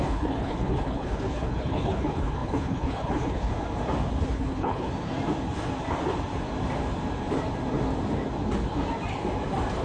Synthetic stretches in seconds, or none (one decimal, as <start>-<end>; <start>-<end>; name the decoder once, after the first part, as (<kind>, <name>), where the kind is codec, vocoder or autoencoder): 0.0-3.5 (codec, HILCodec); 4.2-4.9